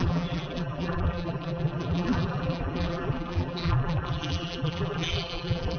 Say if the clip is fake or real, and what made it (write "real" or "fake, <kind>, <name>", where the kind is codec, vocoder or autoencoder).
fake, vocoder, BigVGAN v2